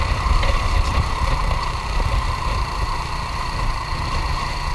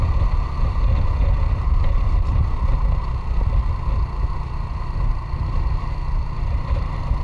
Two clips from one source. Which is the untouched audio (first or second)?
second